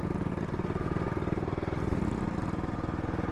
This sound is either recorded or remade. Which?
recorded